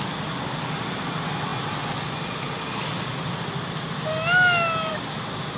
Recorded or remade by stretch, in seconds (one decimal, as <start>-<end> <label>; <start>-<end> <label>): 0.0-5.6 recorded